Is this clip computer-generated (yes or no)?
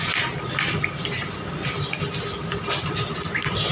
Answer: no